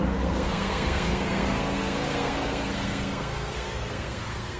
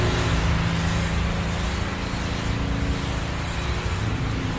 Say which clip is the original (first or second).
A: second